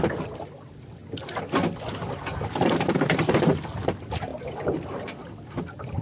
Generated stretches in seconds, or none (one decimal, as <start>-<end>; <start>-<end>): none